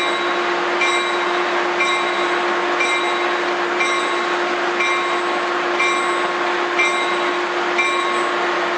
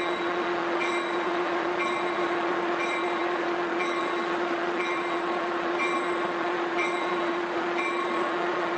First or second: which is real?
first